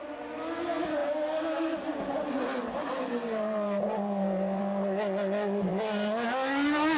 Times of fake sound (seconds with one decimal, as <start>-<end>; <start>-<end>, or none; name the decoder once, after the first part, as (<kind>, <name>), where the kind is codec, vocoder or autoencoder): 1.0-4.6 (vocoder, BigVGAN v2)